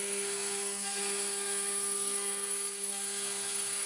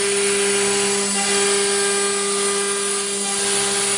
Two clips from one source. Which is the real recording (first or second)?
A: second